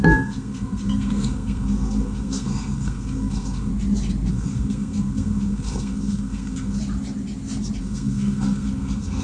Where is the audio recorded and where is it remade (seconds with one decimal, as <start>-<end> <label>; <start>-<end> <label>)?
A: 0.0-3.7 remade; 3.7-4.3 recorded; 4.3-6.8 remade; 6.8-7.8 recorded; 7.8-9.2 remade